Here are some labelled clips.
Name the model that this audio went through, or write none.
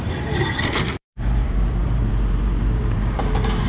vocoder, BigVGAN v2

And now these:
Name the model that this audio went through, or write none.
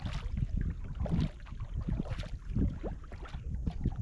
none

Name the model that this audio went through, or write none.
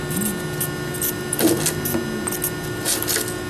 none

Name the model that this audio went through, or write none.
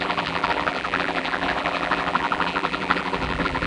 vocoder, BigVGAN v2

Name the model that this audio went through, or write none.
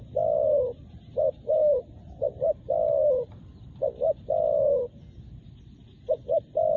none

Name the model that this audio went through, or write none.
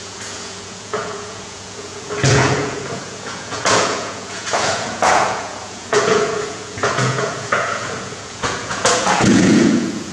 vocoder, Vocos